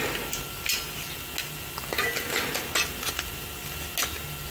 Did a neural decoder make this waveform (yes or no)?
no